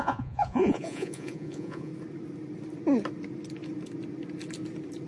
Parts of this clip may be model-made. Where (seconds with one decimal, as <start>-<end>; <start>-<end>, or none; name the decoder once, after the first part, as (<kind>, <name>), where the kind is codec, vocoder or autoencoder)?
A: 0.0-1.9 (vocoder, Vocos)